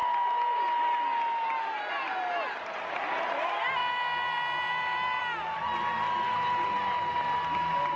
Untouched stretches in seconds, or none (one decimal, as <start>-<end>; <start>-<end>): 0.0-8.0